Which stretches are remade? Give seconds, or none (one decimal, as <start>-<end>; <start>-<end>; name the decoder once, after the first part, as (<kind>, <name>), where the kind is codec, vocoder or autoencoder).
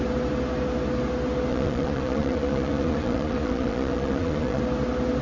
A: 1.5-4.6 (vocoder, Vocos)